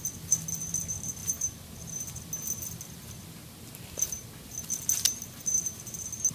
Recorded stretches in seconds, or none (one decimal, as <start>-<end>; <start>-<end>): 0.0-6.3